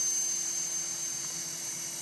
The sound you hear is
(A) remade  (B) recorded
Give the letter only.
B